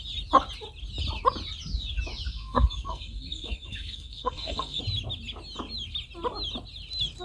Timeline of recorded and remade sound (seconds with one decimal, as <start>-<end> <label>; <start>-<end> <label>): 0.0-2.3 recorded; 2.3-4.8 remade; 4.8-7.2 recorded